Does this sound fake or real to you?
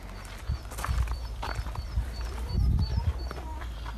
fake